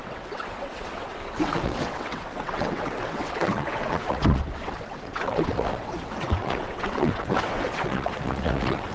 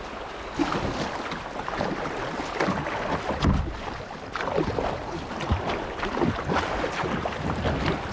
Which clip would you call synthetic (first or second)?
first